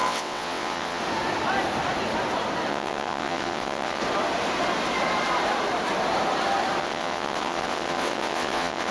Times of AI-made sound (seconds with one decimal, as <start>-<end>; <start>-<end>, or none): 0.0-1.0; 2.7-4.0; 6.8-8.9